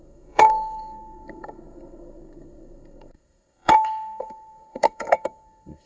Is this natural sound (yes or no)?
no